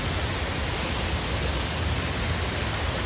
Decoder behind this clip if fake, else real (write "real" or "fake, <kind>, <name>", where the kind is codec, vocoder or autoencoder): real